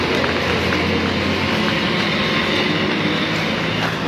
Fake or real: real